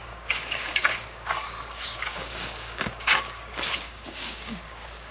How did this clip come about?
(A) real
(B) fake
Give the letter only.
B